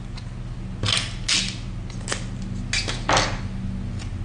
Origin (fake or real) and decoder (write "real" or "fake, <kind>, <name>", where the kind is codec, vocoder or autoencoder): real